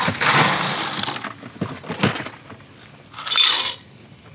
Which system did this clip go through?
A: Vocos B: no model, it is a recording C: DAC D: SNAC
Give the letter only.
B